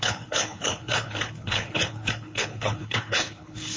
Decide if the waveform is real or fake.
fake